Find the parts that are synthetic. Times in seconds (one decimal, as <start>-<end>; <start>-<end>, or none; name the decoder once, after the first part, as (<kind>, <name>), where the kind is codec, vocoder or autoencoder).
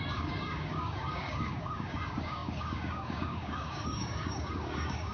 0.0-5.1 (codec, DAC)